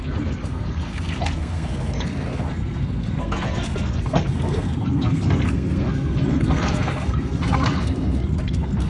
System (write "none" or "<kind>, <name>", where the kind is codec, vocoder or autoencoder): codec, SNAC